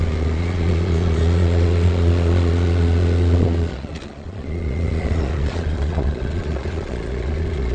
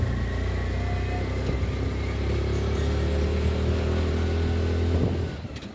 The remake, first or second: first